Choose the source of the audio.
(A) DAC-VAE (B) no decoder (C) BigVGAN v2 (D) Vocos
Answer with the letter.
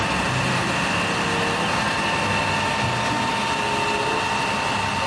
B